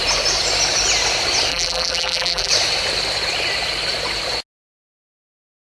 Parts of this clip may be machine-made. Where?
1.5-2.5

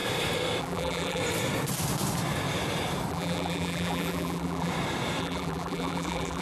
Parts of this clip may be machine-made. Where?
0.6-1.2; 3.1-4.7; 5.2-6.4

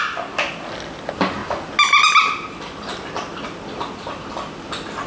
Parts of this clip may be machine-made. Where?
2.9-4.3

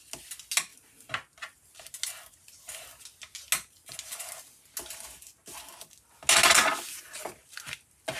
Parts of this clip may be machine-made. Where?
none